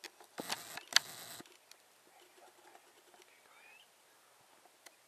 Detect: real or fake real